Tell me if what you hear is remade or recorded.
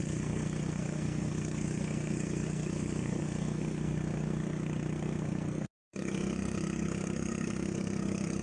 remade